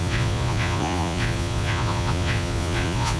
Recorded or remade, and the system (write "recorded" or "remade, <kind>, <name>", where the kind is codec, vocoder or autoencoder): remade, vocoder, Vocos